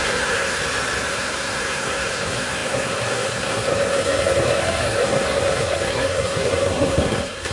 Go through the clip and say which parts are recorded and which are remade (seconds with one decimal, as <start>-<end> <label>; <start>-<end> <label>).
0.0-0.6 remade; 0.6-1.1 recorded; 1.1-7.5 remade